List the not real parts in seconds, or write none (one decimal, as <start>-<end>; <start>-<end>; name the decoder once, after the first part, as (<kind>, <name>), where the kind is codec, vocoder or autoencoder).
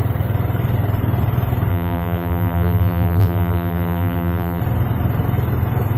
1.7-4.6 (vocoder, BigVGAN v2)